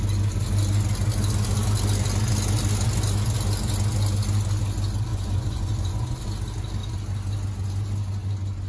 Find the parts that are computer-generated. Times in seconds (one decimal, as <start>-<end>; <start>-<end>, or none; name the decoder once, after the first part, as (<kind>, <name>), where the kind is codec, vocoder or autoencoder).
5.1-6.3 (vocoder, Vocos)